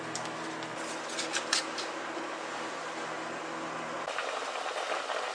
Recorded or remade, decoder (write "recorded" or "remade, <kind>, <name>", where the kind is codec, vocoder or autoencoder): recorded